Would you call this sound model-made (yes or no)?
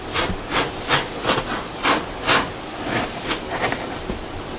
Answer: no